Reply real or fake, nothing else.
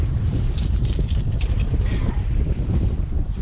fake